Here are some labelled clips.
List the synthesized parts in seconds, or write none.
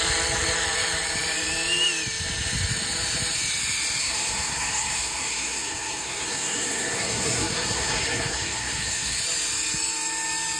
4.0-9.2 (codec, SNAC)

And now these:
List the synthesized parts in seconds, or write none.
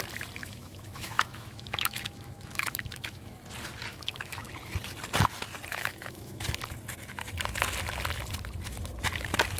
0.4-3.4 (autoencoder, DAC-VAE); 3.9-4.5; 5.7-6.4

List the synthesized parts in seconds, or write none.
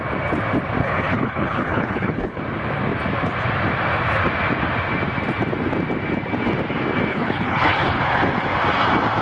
0.8-2.4 (codec, HILCodec); 7.1-8.0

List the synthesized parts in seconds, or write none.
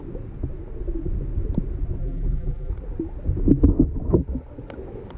2.0-2.7 (vocoder, BigVGAN v2)